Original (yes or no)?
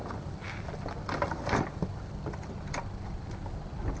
yes